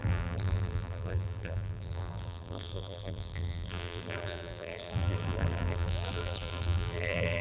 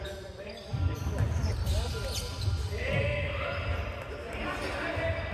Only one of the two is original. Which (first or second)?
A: second